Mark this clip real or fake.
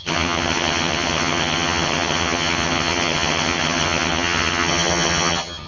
fake